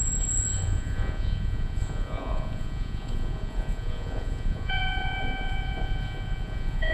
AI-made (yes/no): yes